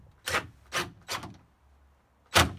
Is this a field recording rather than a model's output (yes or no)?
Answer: yes